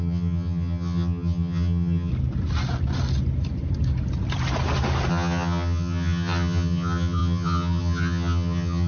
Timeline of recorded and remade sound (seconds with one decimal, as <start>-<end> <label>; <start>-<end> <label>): 0.0-2.1 remade; 2.1-5.1 recorded; 5.1-8.9 remade